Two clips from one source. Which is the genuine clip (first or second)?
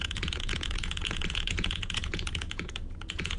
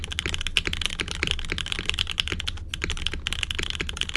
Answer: second